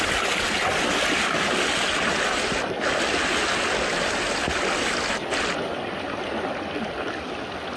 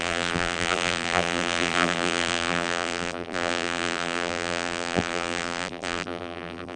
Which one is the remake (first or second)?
second